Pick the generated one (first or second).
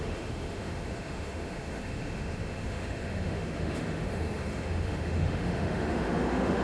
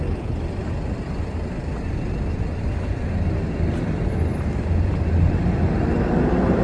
first